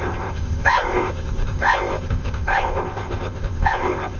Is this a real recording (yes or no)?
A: no